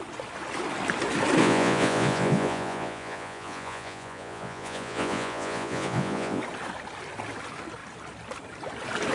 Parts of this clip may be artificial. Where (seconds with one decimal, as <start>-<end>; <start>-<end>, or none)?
1.4-6.4

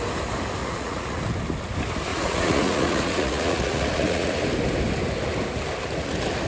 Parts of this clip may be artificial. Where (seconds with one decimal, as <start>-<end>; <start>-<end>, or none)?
0.6-1.2; 2.1-4.4

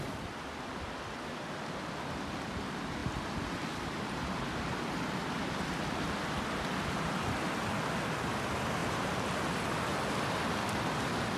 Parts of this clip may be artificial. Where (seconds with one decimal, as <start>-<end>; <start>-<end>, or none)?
none

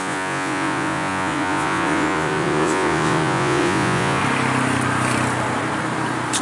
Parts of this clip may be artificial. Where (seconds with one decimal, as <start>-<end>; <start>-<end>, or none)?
0.0-4.2

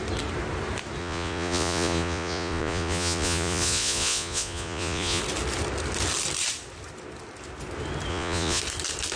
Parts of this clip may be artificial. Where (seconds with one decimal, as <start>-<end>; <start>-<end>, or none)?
1.0-5.2; 8.1-8.6

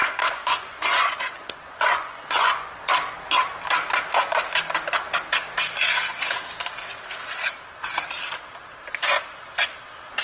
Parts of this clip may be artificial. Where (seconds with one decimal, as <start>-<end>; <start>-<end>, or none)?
0.0-2.9

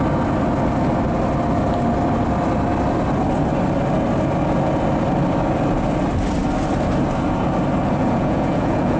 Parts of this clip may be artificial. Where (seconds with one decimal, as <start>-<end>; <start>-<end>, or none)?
8.0-9.0